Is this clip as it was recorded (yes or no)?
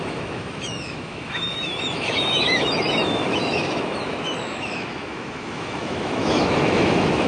no